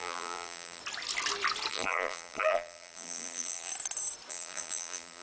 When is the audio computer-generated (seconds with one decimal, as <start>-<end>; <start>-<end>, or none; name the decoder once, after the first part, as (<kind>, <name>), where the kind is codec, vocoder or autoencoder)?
0.0-0.8 (vocoder, BigVGAN v2); 1.7-3.7; 4.3-5.2